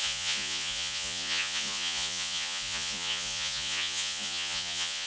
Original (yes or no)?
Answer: no